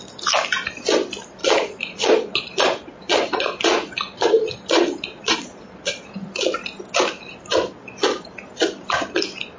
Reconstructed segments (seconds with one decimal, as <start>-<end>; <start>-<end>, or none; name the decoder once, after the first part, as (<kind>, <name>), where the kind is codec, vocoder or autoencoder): 1.4-6.1 (vocoder, Vocos)

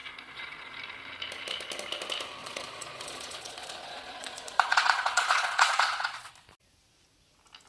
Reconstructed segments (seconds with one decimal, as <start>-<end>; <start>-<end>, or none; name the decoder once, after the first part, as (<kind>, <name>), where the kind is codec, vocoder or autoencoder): 0.0-0.7 (vocoder, Vocos); 2.4-6.3

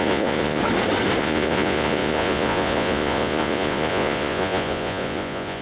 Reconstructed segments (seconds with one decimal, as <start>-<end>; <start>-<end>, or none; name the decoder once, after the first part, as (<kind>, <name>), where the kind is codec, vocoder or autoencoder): 0.0-0.6 (vocoder, Vocos); 1.2-5.6